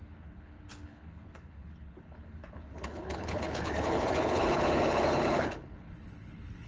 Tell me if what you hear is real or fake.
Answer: fake